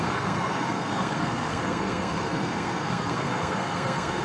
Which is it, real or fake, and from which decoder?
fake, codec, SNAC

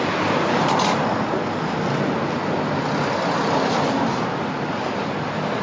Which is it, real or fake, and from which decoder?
real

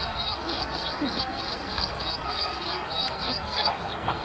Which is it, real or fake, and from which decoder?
fake, codec, SNAC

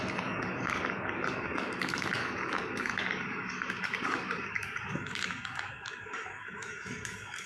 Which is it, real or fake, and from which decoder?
fake, codec, DAC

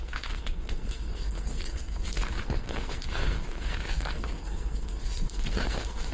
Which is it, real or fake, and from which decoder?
fake, codec, SNAC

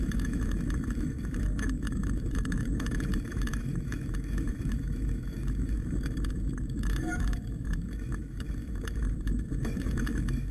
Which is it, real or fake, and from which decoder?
fake, autoencoder, DAC-VAE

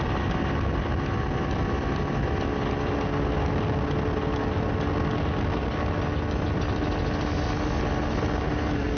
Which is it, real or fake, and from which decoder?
real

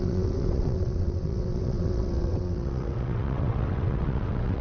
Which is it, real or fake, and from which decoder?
fake, vocoder, WaveNeXt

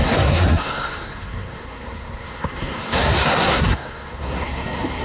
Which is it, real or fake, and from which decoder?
fake, codec, SNAC